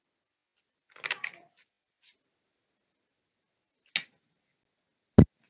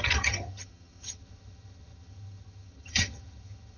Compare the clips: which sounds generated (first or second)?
second